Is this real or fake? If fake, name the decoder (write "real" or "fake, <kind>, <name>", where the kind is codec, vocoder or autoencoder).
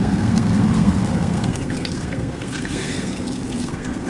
fake, codec, SNAC